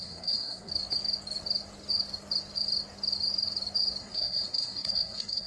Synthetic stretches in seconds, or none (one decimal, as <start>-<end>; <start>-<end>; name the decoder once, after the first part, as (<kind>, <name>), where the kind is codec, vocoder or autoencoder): 0.0-0.7 (codec, SNAC); 4.0-5.5